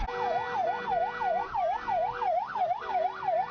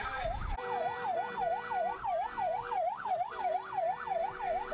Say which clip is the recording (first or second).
first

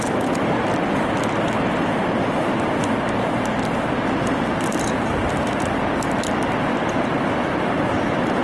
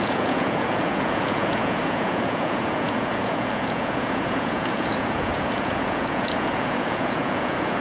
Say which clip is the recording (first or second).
first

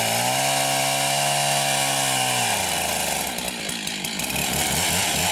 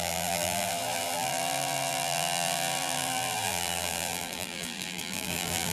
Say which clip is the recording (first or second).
first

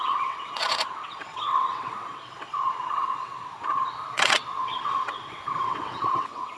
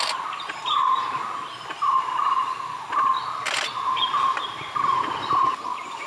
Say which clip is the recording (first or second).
second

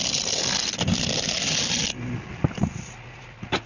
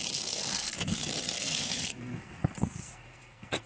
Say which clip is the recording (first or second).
first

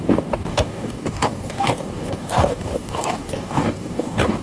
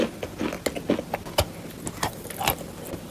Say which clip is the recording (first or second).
second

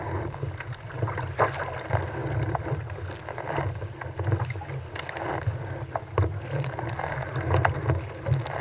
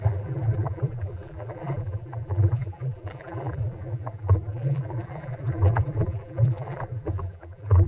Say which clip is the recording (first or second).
first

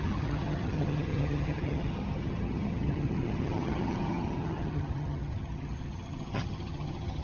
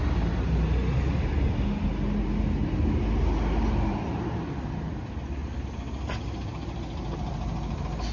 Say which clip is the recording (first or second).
second